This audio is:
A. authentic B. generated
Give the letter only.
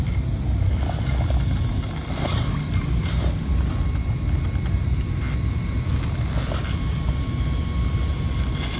A